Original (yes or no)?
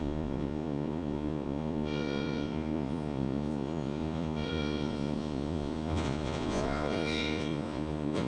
no